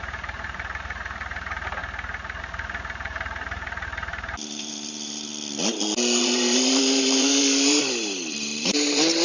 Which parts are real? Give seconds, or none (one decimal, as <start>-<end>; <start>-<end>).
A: 1.8-2.4; 5.3-6.2